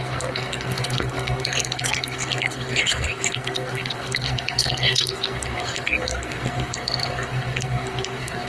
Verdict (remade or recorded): remade